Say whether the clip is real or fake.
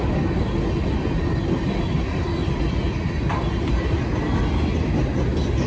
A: real